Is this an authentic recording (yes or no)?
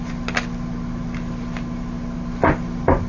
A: yes